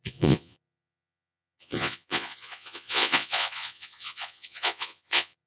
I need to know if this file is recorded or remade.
remade